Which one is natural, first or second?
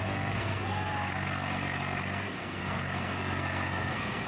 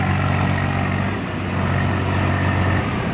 second